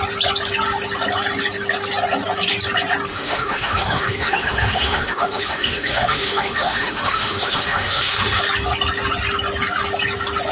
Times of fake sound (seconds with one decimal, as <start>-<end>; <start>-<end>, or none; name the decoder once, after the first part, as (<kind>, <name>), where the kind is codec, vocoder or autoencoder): 3.1-8.4 (autoencoder, DAC-VAE)